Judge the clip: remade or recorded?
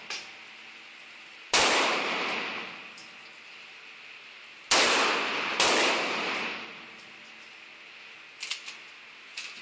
recorded